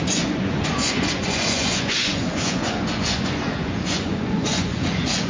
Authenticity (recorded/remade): remade